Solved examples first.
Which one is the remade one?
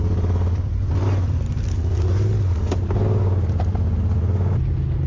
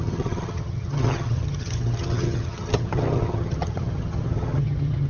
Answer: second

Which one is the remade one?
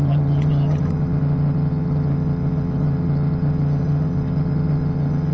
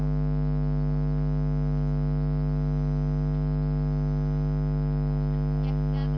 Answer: first